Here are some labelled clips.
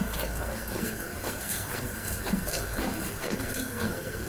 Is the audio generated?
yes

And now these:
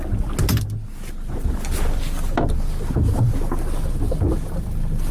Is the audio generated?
no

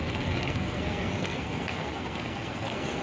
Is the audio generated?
yes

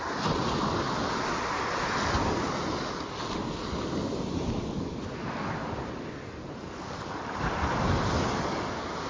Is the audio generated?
no